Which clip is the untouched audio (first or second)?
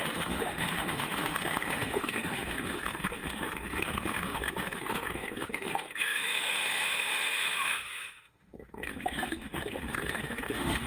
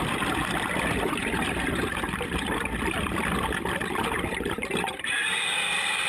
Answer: second